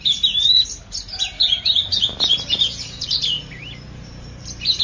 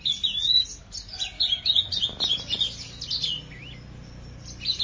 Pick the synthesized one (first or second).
first